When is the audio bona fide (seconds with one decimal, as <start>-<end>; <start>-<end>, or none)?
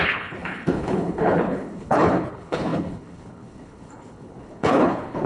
none